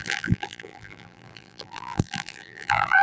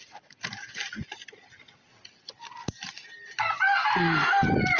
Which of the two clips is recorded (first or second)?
second